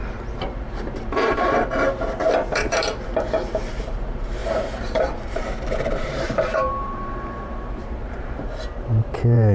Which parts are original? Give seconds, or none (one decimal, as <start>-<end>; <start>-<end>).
none